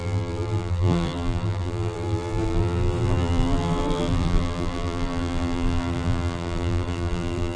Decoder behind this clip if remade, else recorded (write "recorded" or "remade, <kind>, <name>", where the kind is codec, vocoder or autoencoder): remade, vocoder, BigVGAN v2